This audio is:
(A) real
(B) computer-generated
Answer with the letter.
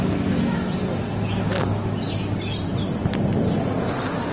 A